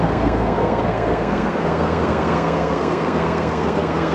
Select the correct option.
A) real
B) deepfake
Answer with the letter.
B